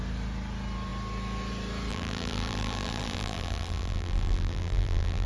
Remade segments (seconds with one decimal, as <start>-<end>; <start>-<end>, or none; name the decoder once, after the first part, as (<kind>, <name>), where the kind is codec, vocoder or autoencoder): 1.9-5.3 (vocoder, BigVGAN v2)